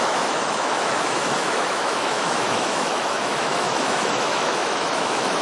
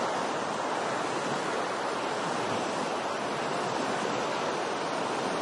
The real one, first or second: second